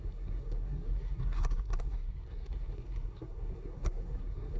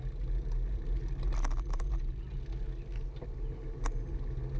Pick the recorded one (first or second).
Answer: second